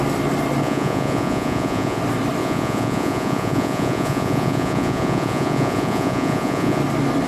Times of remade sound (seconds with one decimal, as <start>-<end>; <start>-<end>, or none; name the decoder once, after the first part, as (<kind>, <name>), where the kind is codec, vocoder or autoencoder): 0.6-2.0 (vocoder, Vocos); 2.4-6.8

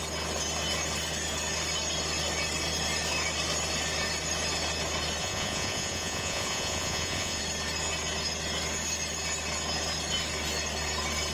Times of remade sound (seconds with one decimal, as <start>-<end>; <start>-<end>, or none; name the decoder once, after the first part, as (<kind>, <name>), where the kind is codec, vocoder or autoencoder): 5.2-7.4 (vocoder, Vocos)

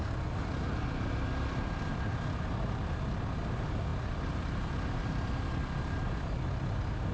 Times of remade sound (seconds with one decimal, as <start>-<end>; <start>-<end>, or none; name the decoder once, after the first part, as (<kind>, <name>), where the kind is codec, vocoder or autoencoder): none

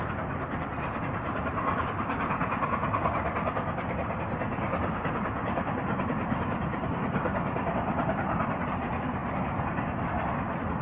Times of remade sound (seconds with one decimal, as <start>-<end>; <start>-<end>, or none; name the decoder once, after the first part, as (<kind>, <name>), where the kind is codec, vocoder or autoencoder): none

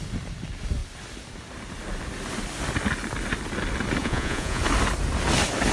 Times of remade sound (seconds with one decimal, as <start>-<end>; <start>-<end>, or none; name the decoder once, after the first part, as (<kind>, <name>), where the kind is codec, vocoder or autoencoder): 4.0-4.6 (vocoder, Vocos)